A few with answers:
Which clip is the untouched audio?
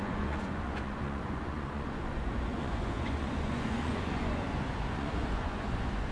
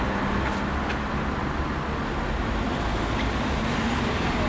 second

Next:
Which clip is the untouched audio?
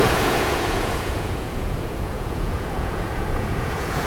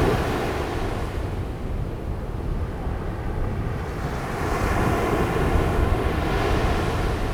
second